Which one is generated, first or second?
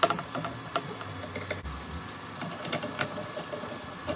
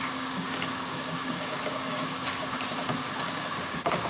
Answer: second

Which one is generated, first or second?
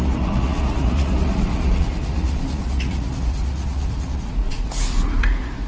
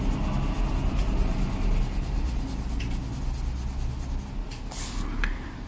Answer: first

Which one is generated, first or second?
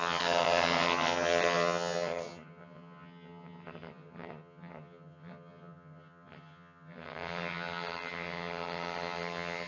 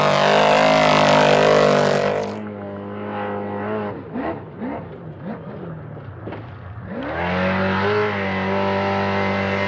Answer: first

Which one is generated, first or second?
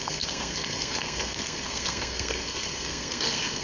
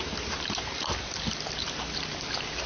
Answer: first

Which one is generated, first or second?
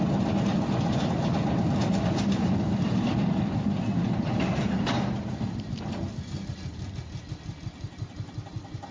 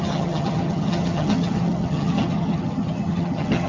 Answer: second